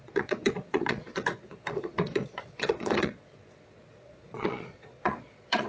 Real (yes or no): no